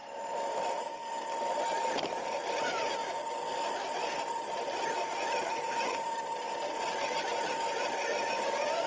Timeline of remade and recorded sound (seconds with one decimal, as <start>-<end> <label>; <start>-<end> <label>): 0.0-3.0 remade; 3.0-3.9 recorded; 3.9-7.3 remade; 7.3-8.0 recorded; 8.0-8.9 remade